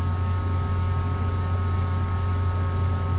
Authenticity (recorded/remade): remade